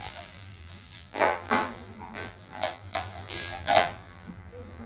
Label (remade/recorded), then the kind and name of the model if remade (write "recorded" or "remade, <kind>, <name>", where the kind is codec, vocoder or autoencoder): remade, vocoder, BigVGAN v2